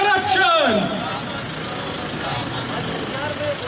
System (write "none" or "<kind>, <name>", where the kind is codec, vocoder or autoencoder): none